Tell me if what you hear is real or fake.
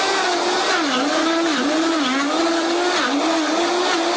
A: real